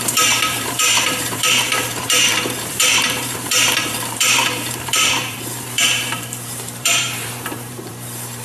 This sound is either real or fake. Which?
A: fake